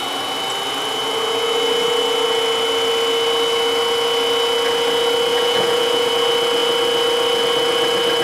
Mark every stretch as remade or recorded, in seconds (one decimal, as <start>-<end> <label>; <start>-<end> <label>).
0.0-5.3 recorded; 5.3-6.1 remade; 6.1-8.2 recorded